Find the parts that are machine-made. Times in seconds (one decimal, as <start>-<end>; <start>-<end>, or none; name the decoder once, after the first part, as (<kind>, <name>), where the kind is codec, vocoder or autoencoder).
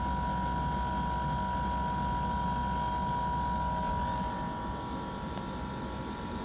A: none